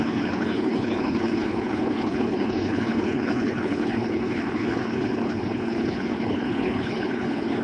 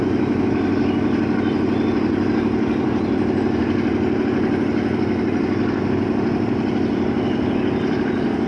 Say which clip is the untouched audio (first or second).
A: second